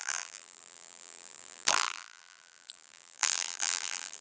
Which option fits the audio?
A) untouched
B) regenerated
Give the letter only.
B